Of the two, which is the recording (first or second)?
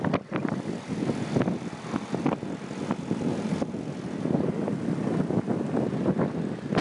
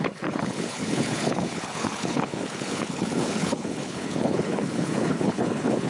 first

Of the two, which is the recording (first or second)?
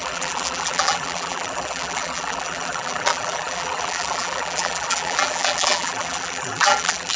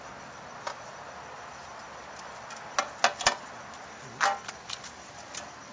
second